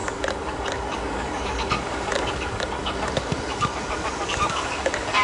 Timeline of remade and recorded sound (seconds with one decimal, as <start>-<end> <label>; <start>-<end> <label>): 0.0-5.2 remade